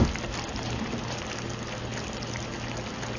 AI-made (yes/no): no